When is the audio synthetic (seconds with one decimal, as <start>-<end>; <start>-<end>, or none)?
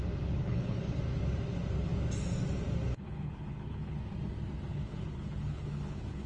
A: 0.4-1.0; 2.9-4.0; 4.7-6.3